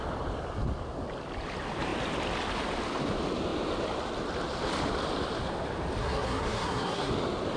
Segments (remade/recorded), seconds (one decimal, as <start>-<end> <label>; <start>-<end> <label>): 0.0-6.0 recorded; 6.0-7.1 remade; 7.1-7.6 recorded

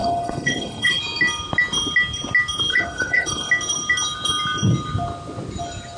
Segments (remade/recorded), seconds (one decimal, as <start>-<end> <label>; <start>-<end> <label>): 0.0-1.0 remade; 1.0-2.7 recorded; 2.7-3.5 remade; 3.5-6.0 recorded

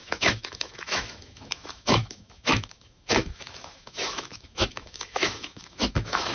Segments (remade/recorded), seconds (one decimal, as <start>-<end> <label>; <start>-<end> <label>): 0.0-6.3 remade

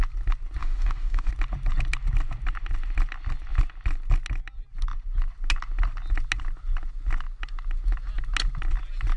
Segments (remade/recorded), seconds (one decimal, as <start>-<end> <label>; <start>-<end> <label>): 0.0-0.6 recorded; 0.6-1.3 remade; 1.3-9.2 recorded

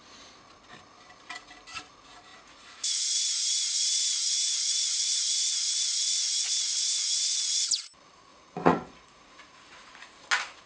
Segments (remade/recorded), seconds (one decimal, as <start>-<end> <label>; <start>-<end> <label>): 0.0-2.3 recorded; 2.3-5.2 remade; 5.2-8.3 recorded; 8.3-10.0 remade; 10.0-10.7 recorded

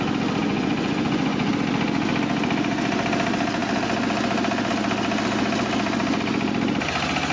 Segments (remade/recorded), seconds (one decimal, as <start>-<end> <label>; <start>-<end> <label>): 0.0-0.4 recorded; 0.4-1.5 remade; 1.5-7.3 recorded

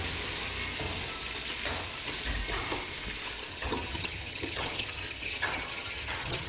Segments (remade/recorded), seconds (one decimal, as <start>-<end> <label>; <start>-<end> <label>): 0.0-3.5 recorded; 3.5-6.5 remade